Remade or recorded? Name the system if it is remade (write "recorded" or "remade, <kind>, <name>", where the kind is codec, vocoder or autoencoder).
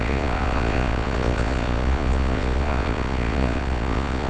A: remade, vocoder, Vocos